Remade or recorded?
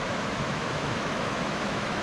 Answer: remade